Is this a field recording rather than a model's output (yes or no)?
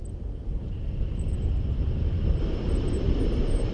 yes